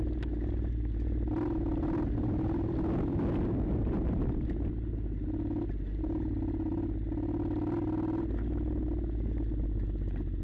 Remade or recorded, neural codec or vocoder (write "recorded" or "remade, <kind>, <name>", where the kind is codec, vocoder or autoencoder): recorded